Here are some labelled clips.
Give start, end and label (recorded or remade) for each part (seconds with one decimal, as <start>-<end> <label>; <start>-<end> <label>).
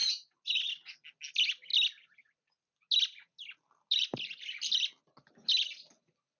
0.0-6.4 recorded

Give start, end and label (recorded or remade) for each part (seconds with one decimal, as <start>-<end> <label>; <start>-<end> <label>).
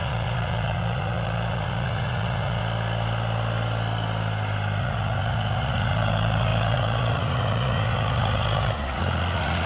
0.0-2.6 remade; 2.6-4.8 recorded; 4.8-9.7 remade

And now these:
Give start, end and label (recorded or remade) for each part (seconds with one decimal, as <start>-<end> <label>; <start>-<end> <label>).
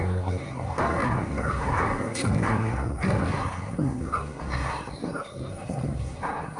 0.0-6.6 remade